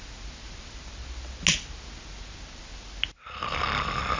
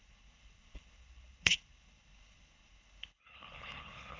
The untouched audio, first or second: first